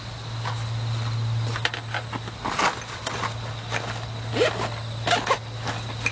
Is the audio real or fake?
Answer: real